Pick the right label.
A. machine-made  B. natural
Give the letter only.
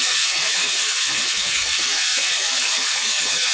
A